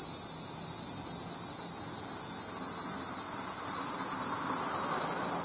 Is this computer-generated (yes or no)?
no